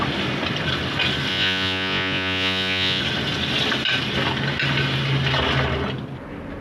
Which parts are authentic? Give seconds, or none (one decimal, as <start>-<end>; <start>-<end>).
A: 0.0-1.3; 3.0-6.6